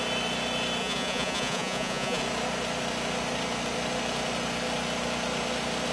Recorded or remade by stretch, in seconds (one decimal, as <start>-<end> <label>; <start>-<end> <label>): 0.0-0.8 recorded; 0.8-2.2 remade; 2.2-5.9 recorded

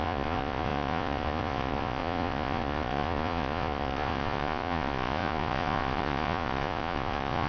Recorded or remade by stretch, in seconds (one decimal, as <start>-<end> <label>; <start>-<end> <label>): 0.0-7.5 remade

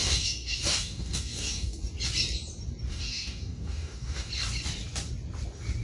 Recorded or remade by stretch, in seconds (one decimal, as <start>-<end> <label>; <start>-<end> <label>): 0.0-1.8 remade; 1.8-2.9 recorded; 2.9-4.3 remade; 4.3-5.8 recorded

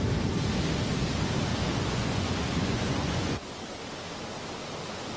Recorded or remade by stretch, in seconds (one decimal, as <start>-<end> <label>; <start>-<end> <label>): 0.0-1.5 recorded; 1.5-3.5 remade; 3.5-5.2 recorded

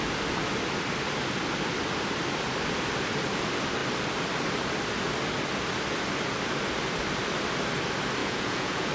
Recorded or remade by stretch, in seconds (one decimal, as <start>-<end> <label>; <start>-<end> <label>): 0.0-8.2 recorded; 8.2-8.9 remade

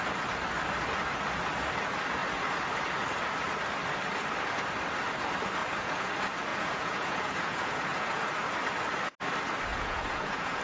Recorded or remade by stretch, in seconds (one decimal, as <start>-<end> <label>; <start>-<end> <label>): 0.0-5.6 recorded; 5.6-6.1 remade; 6.1-6.5 recorded; 6.5-8.2 remade; 8.2-9.7 recorded; 9.7-10.6 remade

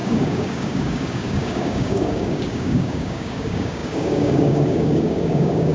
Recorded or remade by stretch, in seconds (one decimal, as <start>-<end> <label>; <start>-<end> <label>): 0.0-5.7 remade